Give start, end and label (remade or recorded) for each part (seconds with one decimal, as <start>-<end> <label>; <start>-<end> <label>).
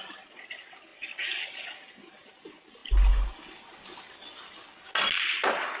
0.0-5.8 recorded